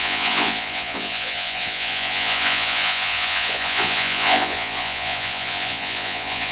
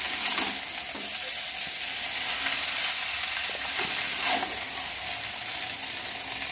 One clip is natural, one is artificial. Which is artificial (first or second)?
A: first